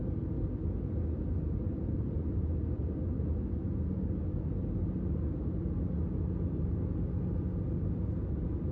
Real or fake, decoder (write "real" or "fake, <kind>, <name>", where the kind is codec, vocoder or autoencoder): real